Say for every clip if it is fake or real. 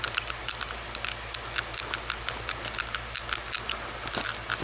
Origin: real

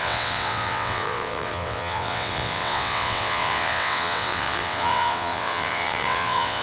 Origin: fake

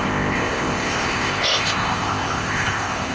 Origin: fake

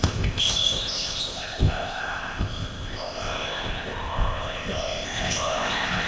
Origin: fake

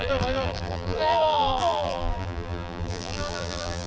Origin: fake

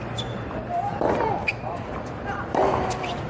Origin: real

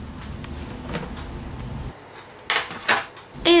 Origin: real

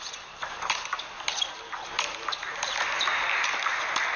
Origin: real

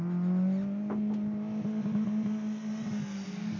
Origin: real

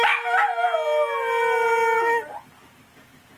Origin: real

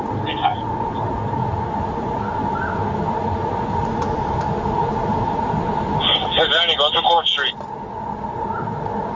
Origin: real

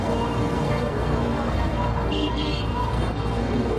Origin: fake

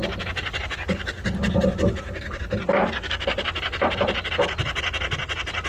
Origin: real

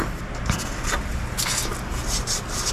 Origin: real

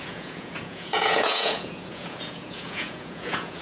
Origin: fake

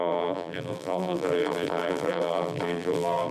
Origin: fake